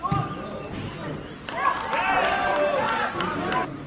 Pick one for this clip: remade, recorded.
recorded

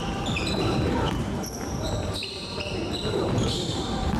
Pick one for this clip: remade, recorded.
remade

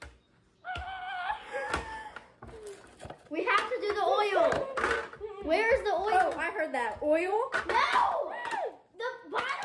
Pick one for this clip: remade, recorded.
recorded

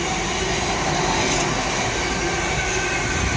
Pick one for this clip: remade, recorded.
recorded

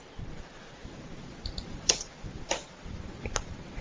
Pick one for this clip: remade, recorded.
recorded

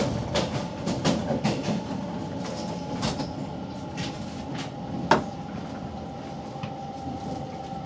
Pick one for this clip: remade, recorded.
recorded